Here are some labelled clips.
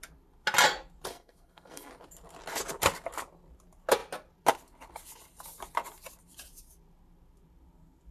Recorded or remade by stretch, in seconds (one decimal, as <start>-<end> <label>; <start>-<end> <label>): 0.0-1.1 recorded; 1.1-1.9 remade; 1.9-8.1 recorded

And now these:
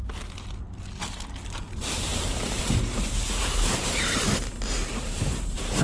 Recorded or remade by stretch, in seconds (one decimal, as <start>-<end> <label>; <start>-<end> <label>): 0.0-2.1 recorded; 2.1-5.8 remade

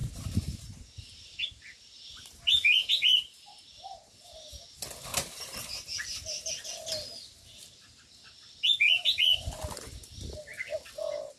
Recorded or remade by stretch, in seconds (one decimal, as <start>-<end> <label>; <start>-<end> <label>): 0.0-3.7 remade; 3.7-5.1 recorded; 5.1-6.5 remade; 6.5-11.4 recorded

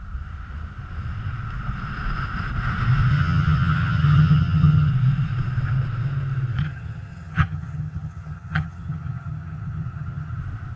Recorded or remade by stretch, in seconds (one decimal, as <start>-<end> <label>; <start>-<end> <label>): 0.0-3.1 recorded; 3.1-4.9 remade; 4.9-6.6 recorded; 6.6-10.4 remade; 10.4-10.8 recorded